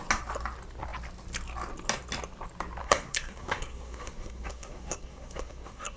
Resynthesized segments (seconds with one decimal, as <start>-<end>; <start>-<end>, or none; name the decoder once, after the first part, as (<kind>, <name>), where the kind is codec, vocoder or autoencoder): 2.8-6.0 (codec, SNAC)